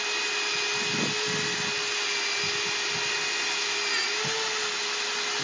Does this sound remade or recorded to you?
recorded